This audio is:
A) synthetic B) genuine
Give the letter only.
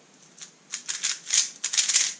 B